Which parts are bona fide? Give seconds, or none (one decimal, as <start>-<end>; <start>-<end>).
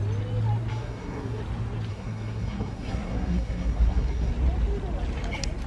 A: 0.0-0.7; 1.4-1.9; 4.3-5.7